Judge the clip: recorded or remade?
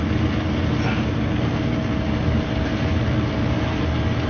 recorded